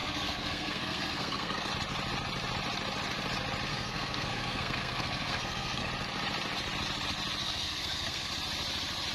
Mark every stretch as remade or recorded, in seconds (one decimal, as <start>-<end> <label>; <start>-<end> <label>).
0.0-1.7 remade; 1.7-3.7 recorded; 3.7-5.9 remade; 5.9-7.4 recorded; 7.4-8.3 remade; 8.3-9.1 recorded

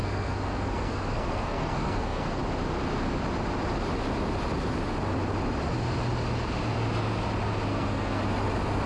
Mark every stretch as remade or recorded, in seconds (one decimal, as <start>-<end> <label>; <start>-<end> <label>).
0.0-2.4 remade; 2.4-7.7 recorded; 7.7-8.2 remade; 8.2-8.9 recorded

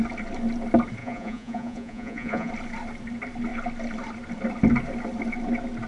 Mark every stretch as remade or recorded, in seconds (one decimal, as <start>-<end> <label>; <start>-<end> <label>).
0.0-1.0 recorded; 1.0-2.5 remade; 2.5-5.9 recorded

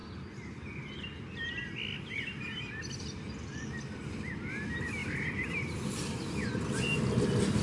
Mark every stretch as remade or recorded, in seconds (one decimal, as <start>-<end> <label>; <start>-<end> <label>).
0.0-7.6 recorded

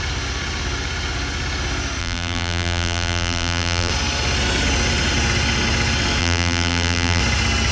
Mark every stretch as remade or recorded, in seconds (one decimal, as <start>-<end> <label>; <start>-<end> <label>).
0.0-2.0 recorded; 2.0-3.9 remade; 3.9-6.2 recorded; 6.2-7.2 remade; 7.2-7.7 recorded